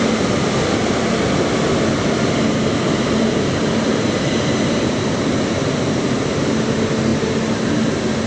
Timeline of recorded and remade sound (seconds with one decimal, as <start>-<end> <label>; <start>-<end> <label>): 0.0-8.3 recorded